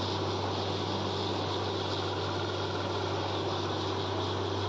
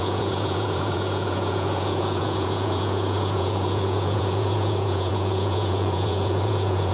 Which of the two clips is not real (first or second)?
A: second